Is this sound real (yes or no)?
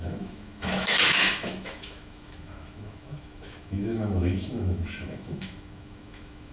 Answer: no